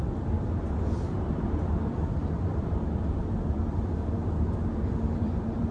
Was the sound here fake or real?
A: fake